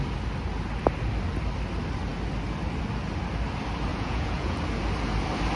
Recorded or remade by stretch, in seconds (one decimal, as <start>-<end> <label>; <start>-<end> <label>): 0.0-3.9 recorded; 3.9-4.6 remade; 4.6-5.6 recorded